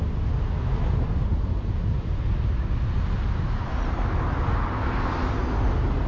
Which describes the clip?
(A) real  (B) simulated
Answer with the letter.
A